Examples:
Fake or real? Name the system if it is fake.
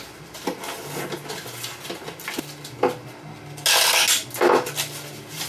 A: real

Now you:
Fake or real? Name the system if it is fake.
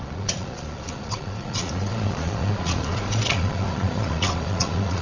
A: fake, vocoder, Vocos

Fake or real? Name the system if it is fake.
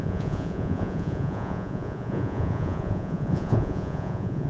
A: fake, vocoder, Vocos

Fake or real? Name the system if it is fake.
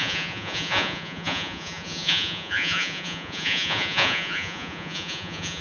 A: fake, vocoder, Vocos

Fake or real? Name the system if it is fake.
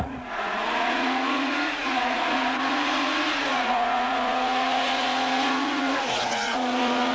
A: fake, vocoder, Vocos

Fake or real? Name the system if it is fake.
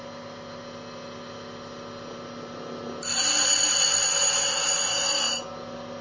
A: real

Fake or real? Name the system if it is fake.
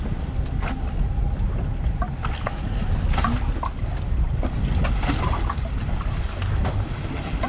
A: real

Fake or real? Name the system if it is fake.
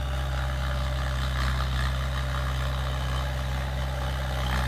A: real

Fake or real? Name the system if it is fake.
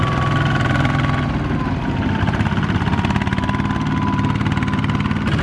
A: real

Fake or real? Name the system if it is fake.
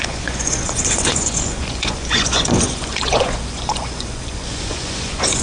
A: fake, vocoder, Vocos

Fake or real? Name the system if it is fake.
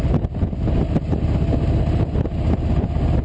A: real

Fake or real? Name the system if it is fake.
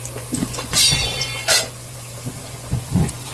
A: fake, vocoder, Vocos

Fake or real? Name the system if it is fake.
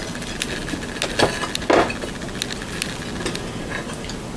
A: real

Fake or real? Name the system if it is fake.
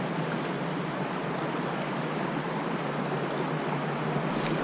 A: real